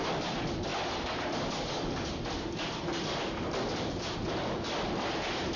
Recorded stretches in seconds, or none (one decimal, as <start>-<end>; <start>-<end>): 0.0-5.6